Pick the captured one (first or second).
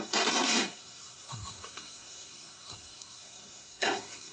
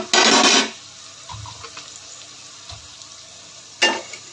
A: second